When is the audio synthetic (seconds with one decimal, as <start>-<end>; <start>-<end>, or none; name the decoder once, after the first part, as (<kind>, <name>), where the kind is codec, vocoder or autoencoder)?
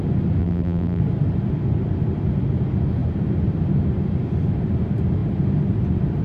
0.4-1.0 (vocoder, BigVGAN v2)